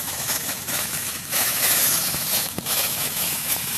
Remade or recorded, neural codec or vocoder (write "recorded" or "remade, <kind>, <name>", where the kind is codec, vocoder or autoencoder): remade, autoencoder, DAC-VAE